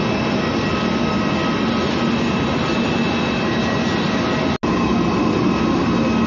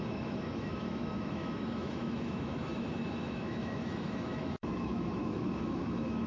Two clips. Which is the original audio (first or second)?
first